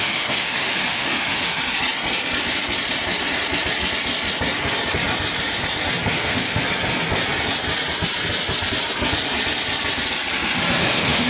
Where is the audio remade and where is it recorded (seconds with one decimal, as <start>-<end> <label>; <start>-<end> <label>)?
0.0-1.6 remade; 1.6-6.1 recorded; 6.1-6.6 remade; 6.6-10.8 recorded; 10.8-11.3 remade